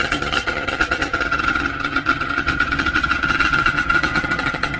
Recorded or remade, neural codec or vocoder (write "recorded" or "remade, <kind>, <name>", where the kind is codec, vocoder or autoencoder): remade, vocoder, HiFi-GAN